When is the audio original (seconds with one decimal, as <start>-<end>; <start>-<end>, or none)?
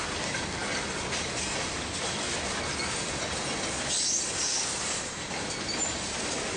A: 0.0-6.6